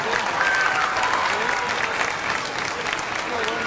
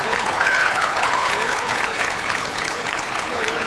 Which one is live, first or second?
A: first